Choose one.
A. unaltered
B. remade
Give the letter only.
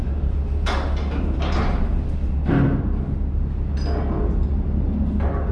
A